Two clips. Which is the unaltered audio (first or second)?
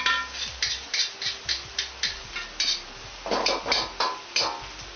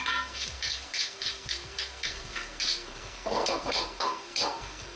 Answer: first